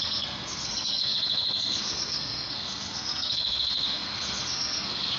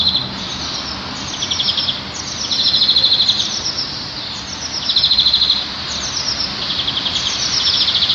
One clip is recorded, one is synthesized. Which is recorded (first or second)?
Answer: second